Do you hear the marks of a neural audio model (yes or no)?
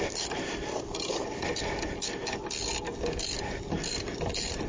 no